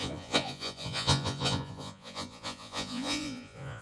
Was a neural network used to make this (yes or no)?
yes